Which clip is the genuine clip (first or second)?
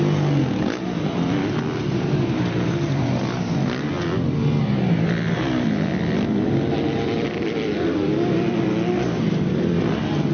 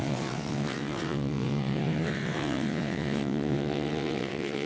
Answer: first